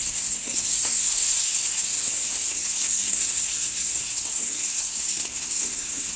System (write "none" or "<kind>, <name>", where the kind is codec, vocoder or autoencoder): codec, SNAC